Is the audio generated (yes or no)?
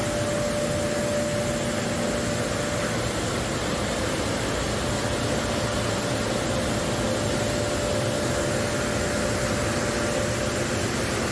no